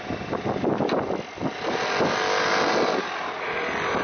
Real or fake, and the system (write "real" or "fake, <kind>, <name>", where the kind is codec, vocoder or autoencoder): real